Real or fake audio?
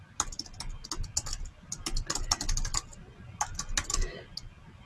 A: real